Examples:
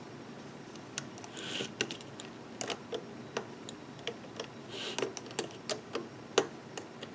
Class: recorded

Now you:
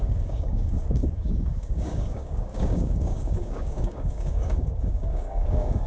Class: remade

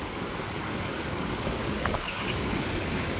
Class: remade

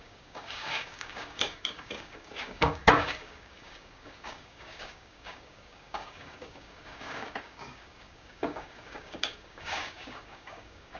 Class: remade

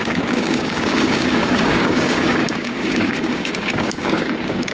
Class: remade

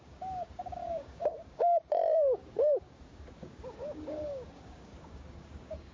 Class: remade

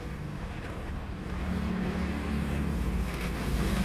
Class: remade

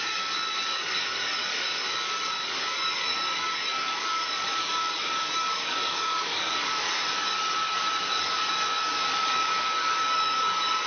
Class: remade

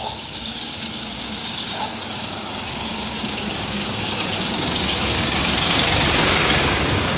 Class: remade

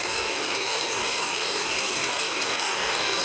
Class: remade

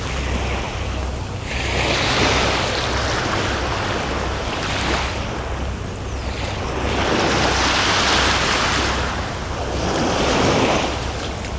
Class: recorded